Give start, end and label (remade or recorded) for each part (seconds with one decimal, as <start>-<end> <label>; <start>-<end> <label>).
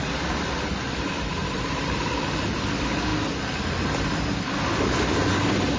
0.0-1.4 recorded; 1.4-2.3 remade; 2.3-5.8 recorded